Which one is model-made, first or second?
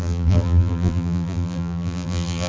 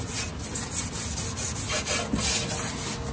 first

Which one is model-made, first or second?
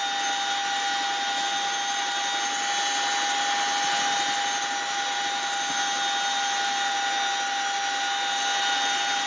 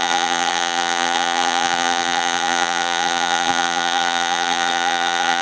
second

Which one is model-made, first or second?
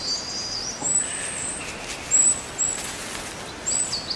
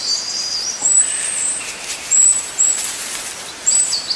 second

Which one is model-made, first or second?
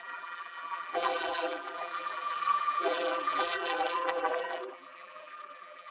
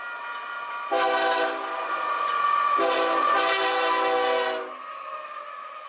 first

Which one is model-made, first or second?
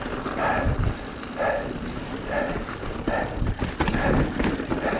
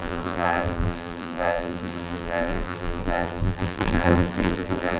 second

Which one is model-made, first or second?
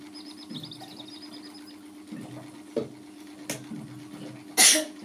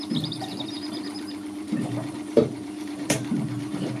second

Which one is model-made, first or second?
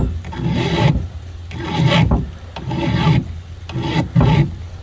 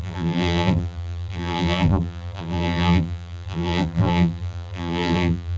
second